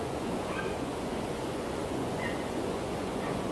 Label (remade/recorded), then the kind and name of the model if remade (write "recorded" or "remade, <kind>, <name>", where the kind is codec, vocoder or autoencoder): remade, vocoder, Vocos